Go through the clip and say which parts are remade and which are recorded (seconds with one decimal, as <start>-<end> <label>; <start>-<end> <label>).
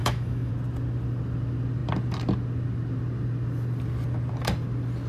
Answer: 0.0-0.5 remade; 0.5-5.1 recorded